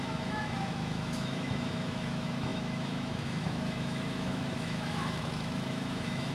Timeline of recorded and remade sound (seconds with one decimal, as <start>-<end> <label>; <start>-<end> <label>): 0.0-6.3 remade